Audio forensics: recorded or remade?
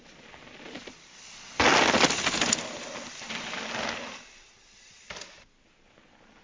recorded